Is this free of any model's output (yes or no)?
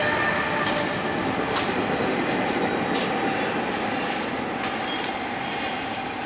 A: yes